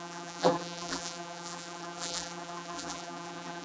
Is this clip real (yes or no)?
no